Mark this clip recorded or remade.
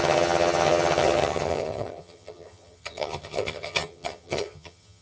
remade